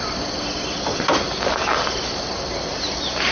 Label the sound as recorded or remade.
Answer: recorded